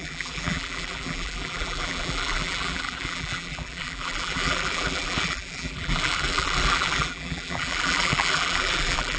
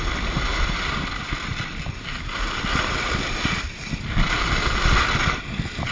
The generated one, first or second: first